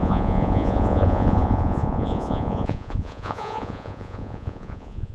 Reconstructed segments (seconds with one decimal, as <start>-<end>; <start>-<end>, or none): 0.0-5.1